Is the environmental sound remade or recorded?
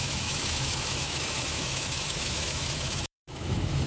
remade